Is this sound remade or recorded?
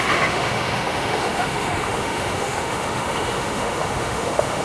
remade